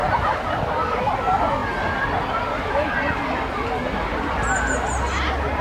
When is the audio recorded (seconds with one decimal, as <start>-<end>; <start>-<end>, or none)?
0.0-1.6; 4.7-5.6